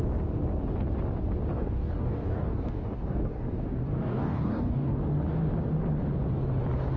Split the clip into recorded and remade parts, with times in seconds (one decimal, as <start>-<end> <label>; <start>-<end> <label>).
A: 0.0-1.5 recorded; 1.5-5.0 remade; 5.0-7.0 recorded